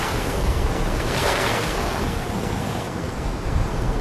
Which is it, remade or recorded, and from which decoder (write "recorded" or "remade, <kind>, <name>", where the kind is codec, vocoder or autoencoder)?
remade, codec, SNAC